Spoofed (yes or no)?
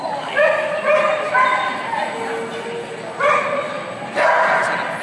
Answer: no